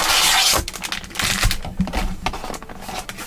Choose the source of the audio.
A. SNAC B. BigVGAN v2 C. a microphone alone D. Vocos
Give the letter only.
C